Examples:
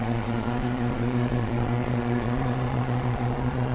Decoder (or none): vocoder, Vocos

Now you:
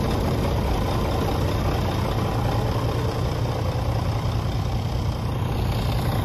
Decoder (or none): none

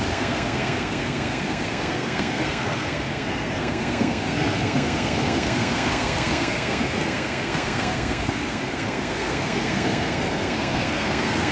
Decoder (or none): codec, SNAC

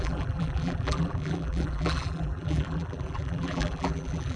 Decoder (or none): vocoder, BigVGAN v2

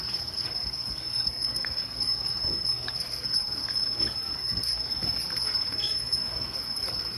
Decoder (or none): codec, SNAC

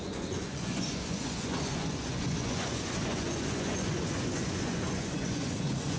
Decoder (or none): vocoder, Vocos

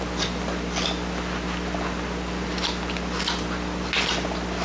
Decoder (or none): none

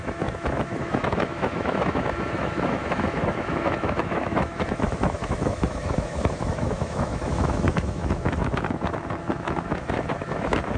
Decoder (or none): autoencoder, DAC-VAE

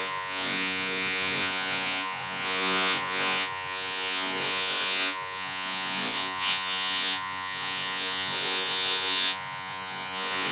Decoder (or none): vocoder, Vocos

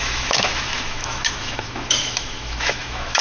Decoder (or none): autoencoder, DAC-VAE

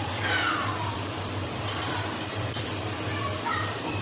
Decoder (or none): vocoder, BigVGAN v2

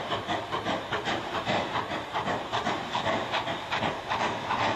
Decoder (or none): vocoder, BigVGAN v2